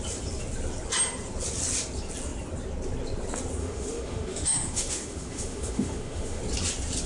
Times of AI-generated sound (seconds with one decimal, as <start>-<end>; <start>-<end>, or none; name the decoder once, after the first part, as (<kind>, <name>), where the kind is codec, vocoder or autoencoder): 3.6-6.4 (autoencoder, DAC-VAE)